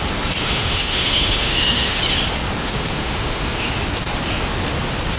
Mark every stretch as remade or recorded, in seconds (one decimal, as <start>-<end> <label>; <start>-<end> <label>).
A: 0.0-0.4 recorded; 0.4-2.0 remade; 2.0-2.6 recorded; 2.6-3.7 remade; 3.7-5.2 recorded